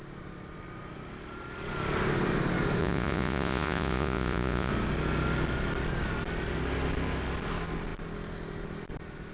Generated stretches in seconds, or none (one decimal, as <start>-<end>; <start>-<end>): 2.8-4.7